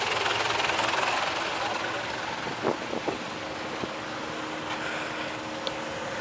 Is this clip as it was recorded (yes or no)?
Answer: yes